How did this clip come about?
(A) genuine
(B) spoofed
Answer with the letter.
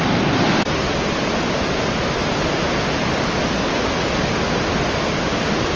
A